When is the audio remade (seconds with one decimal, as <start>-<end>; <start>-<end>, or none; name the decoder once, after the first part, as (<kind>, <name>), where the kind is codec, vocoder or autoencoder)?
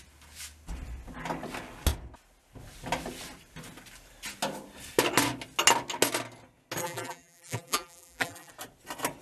6.8-8.5 (vocoder, BigVGAN v2)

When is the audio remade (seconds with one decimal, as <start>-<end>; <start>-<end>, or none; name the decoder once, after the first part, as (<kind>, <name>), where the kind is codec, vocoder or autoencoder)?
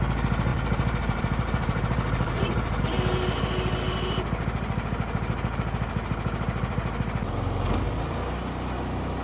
0.5-2.8 (vocoder, BigVGAN v2)